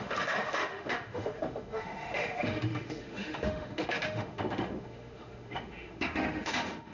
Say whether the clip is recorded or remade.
remade